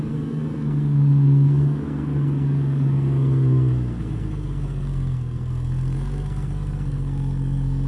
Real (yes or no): no